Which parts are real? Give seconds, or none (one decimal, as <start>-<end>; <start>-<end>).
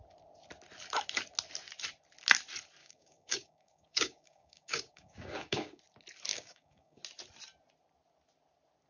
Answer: 0.0-2.8; 5.8-6.3; 7.0-8.9